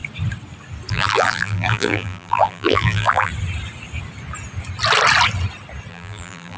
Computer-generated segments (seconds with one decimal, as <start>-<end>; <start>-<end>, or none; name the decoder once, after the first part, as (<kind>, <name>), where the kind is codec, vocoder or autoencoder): 0.9-3.3 (vocoder, BigVGAN v2); 5.9-6.6